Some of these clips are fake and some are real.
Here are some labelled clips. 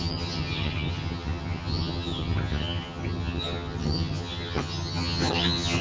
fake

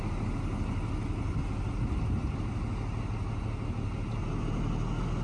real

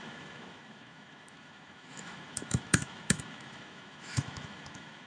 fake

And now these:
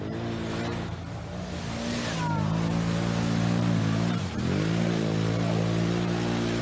real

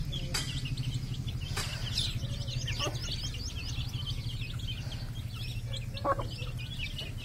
real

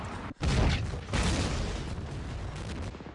real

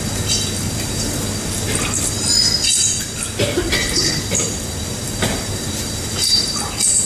fake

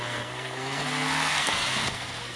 fake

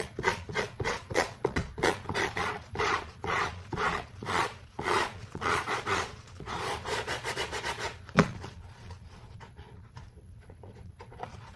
fake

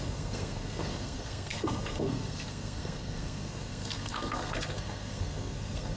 fake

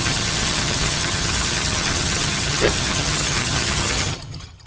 fake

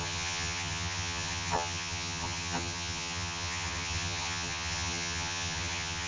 fake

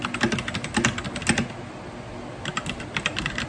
real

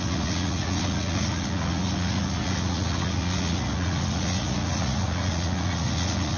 fake